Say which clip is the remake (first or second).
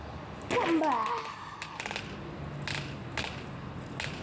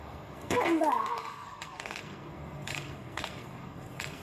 second